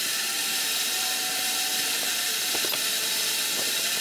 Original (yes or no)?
no